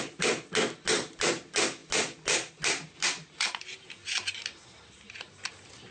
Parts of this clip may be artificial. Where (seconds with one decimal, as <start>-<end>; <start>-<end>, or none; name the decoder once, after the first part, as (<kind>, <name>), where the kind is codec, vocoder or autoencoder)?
none